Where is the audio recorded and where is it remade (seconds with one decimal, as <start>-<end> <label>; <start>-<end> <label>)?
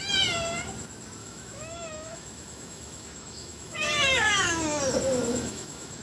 0.0-1.2 recorded; 1.2-4.8 remade; 4.8-5.3 recorded; 5.3-6.0 remade